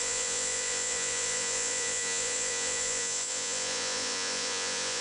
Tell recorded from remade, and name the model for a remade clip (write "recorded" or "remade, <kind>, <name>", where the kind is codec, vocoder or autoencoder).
remade, vocoder, Vocos